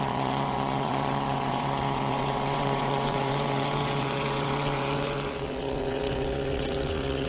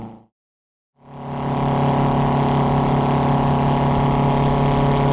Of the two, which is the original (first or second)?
second